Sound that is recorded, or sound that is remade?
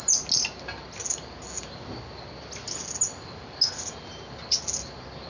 recorded